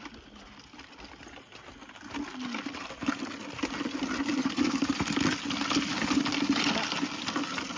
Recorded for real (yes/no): yes